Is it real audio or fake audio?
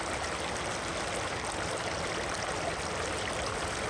real